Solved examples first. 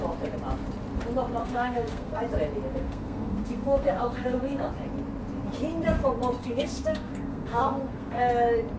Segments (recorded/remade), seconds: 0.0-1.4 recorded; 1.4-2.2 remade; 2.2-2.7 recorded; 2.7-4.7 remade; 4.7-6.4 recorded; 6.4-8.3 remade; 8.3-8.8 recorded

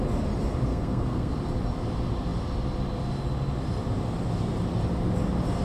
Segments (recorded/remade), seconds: 0.0-0.7 recorded; 0.7-1.3 remade; 1.3-5.6 recorded

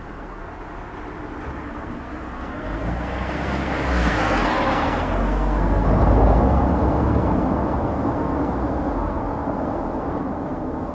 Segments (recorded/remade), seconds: 0.0-0.4 remade; 0.4-1.6 recorded; 1.6-10.9 remade

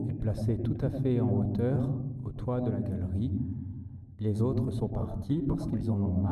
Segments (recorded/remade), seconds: 0.0-3.7 recorded; 3.7-4.4 remade; 4.4-5.0 recorded; 5.0-6.3 remade

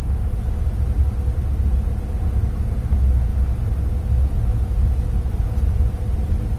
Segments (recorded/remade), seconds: 0.0-6.6 recorded